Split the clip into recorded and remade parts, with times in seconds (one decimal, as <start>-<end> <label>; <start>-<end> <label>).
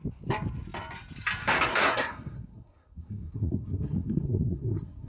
0.0-1.7 recorded; 1.7-5.1 remade